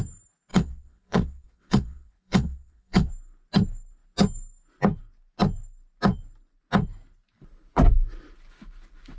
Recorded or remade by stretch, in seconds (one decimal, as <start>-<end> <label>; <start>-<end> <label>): 0.0-0.5 recorded; 0.5-3.1 remade; 3.1-9.2 recorded